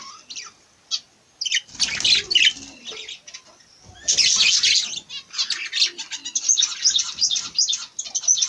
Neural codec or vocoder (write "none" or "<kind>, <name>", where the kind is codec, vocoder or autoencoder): none